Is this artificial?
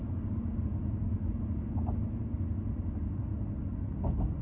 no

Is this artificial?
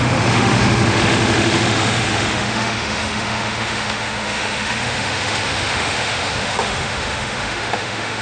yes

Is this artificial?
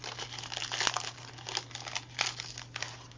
no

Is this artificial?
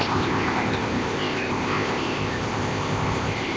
yes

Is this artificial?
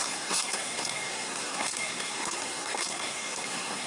yes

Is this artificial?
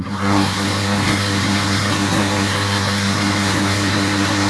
yes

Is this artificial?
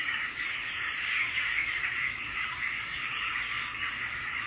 yes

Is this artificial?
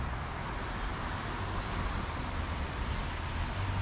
no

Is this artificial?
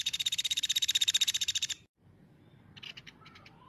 yes